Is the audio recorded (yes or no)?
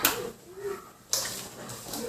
yes